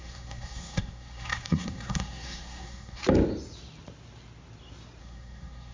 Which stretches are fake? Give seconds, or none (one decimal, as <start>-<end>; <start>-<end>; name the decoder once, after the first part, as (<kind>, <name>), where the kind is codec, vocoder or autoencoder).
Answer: 0.0-3.0 (codec, SNAC); 5.0-5.7